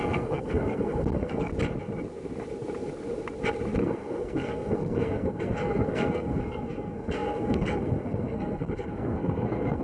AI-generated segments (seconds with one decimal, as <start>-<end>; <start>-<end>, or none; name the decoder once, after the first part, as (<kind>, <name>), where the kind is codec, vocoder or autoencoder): 0.0-1.5 (codec, SNAC); 3.8-9.8